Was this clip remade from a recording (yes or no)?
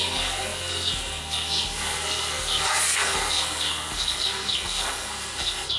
yes